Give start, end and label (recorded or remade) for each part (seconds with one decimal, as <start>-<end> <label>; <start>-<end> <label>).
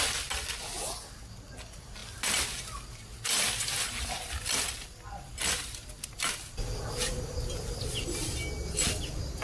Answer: 0.0-9.4 recorded